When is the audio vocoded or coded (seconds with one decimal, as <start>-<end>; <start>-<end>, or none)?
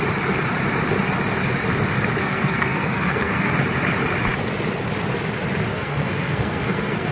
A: 2.2-3.5; 5.7-7.1